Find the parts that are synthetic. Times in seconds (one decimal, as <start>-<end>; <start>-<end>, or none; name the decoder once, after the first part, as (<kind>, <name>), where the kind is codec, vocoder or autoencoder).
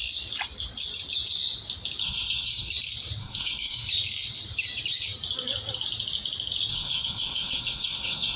2.0-2.7 (codec, SNAC); 3.2-3.9; 6.7-8.4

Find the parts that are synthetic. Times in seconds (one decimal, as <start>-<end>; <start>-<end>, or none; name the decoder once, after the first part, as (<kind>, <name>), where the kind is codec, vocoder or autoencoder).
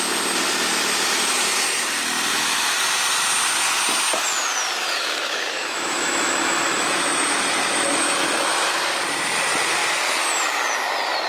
2.3-2.8 (autoencoder, DAC-VAE); 4.8-8.8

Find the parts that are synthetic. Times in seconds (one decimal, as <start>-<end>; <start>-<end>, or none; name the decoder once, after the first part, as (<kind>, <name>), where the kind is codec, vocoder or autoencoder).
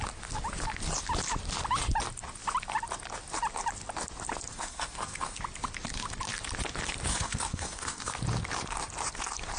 4.5-5.4 (codec, SNAC); 7.1-8.1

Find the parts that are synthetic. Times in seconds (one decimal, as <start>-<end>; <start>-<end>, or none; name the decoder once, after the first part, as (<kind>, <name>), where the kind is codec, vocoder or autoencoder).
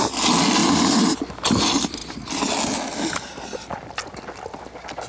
0.6-1.2 (vocoder, BigVGAN v2)